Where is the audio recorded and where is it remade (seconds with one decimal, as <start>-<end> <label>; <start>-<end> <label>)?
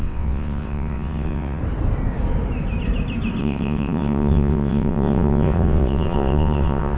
0.0-1.6 remade; 1.6-3.4 recorded; 3.4-7.0 remade